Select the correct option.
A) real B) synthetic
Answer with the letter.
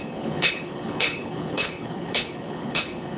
B